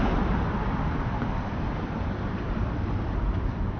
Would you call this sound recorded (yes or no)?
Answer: no